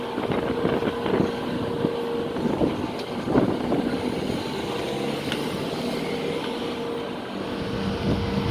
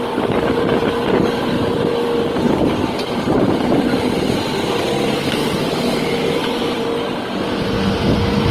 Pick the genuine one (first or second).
first